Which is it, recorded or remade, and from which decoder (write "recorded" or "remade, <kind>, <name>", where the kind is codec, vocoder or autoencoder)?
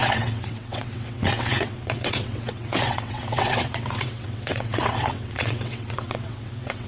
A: remade, vocoder, WaveNeXt